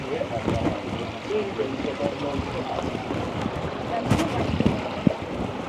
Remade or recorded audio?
recorded